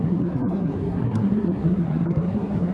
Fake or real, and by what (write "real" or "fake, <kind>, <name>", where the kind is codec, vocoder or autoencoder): fake, codec, SNAC